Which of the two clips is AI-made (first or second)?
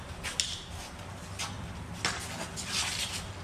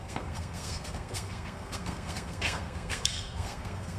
second